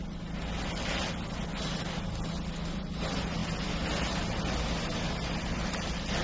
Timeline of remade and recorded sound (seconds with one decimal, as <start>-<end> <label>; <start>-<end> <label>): 0.0-6.2 recorded